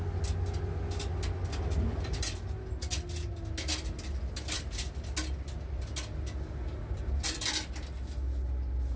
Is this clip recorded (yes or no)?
yes